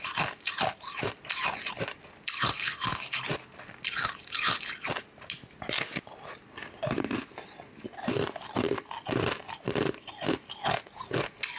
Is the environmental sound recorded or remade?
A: recorded